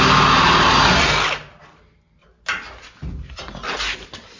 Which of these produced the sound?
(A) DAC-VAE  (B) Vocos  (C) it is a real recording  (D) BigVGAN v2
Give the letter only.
C